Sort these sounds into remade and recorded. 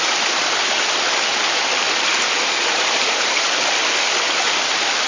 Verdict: recorded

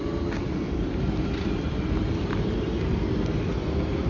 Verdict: recorded